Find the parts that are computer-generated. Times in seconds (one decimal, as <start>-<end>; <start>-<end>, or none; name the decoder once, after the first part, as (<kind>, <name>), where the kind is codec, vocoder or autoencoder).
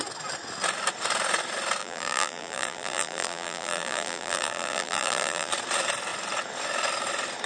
1.8-5.5 (vocoder, BigVGAN v2)